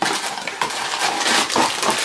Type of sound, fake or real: real